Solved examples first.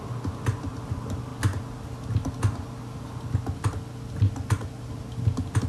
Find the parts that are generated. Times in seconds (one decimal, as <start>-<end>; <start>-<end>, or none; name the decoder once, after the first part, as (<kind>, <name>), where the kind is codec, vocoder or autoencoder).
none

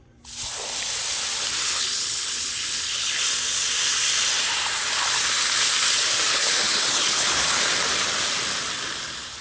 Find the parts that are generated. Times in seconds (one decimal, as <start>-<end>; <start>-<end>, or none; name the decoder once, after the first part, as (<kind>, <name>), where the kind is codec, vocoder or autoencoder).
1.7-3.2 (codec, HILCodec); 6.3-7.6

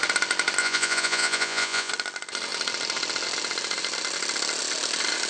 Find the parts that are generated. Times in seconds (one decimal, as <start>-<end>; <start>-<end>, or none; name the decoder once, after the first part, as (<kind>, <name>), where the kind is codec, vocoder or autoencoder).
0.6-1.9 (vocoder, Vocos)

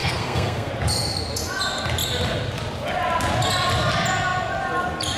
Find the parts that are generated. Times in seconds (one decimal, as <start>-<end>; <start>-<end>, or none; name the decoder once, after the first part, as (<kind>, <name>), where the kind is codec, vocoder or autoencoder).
0.0-0.7 (codec, SNAC)

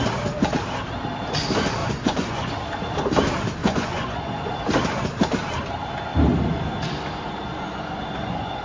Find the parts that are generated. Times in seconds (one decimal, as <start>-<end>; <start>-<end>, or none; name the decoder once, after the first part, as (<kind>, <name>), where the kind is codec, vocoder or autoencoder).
1.8-2.5 (vocoder, Vocos); 3.6-4.5; 7.5-8.6